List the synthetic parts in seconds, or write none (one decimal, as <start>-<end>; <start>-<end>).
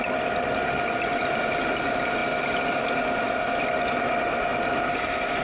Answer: none